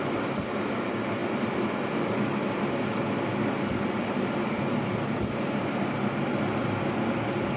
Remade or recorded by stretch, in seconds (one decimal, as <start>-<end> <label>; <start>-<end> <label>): 0.0-1.2 recorded; 1.2-2.2 remade; 2.2-7.6 recorded